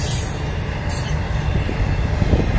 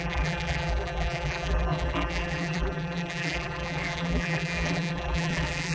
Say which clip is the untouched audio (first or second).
first